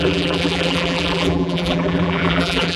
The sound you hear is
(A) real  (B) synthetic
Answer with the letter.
B